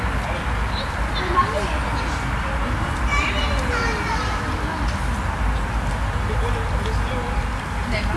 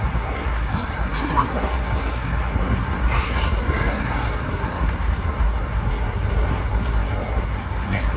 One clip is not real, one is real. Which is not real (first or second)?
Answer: second